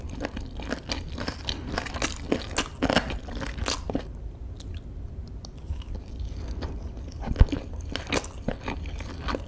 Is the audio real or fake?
real